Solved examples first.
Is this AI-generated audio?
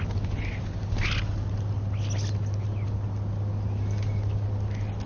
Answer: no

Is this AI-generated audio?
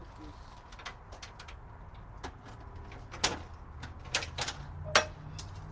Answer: no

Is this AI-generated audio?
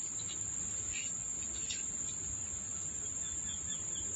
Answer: no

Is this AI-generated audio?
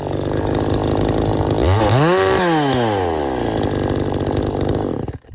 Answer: no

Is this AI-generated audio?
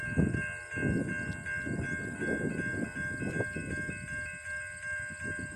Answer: no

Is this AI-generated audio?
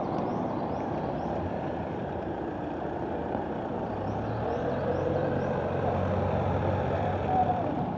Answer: yes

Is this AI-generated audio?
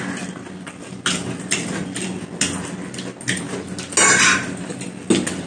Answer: no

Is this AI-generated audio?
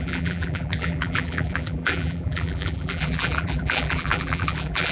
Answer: yes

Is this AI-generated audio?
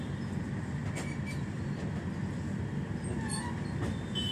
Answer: no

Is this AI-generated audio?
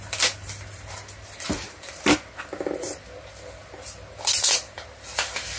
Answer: yes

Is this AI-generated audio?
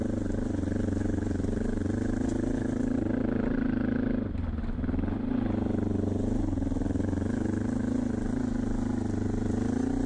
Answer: no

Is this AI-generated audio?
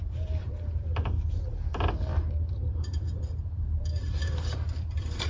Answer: yes